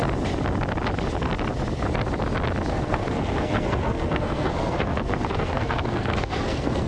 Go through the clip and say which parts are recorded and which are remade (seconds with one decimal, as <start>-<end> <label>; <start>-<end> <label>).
0.0-2.7 recorded; 2.7-6.9 remade